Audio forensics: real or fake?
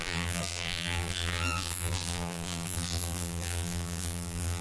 fake